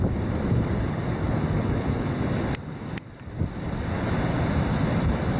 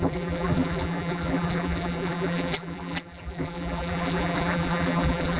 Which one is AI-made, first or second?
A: second